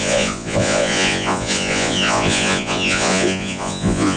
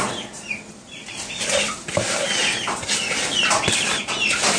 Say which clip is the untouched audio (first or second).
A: second